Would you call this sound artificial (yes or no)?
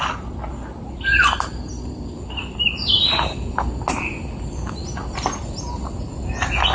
no